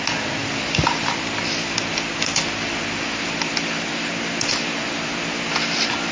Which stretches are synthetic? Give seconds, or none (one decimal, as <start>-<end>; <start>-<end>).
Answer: none